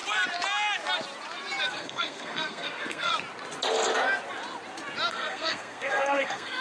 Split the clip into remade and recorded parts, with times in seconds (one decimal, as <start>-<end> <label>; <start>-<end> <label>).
0.0-1.7 recorded; 1.7-3.1 remade; 3.1-5.1 recorded; 5.1-6.6 remade